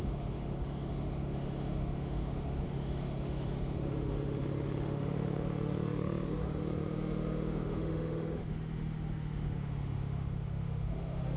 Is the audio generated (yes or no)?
yes